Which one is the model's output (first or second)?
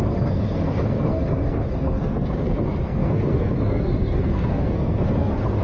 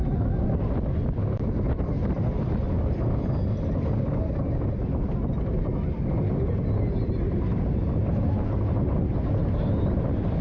first